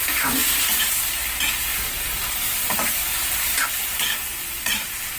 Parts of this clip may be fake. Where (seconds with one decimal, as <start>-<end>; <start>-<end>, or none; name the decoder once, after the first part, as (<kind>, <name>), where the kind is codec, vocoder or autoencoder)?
none